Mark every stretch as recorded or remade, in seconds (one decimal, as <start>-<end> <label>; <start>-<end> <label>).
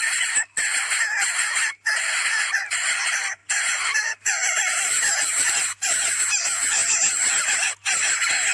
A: 0.0-3.4 recorded; 3.4-5.5 remade; 5.5-8.5 recorded